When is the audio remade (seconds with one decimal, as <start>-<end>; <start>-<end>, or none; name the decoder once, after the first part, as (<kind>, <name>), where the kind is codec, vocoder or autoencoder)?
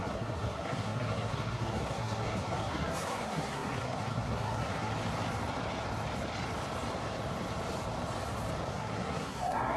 0.0-4.9 (codec, SNAC); 8.7-9.8